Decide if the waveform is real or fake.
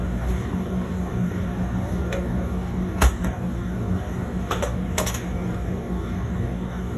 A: fake